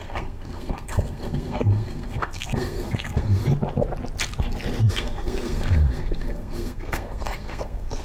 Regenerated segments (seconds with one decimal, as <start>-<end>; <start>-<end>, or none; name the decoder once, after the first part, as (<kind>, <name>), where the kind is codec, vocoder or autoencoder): 0.0-3.4 (codec, SNAC); 4.9-8.0